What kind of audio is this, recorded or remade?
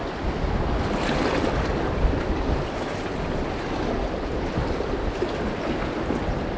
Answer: recorded